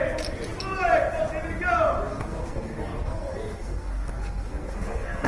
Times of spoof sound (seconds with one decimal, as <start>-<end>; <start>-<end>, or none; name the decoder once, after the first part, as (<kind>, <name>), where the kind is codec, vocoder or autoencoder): 2.1-5.3 (codec, SNAC)